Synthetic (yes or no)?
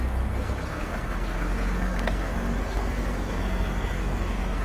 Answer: yes